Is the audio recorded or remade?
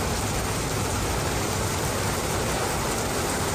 recorded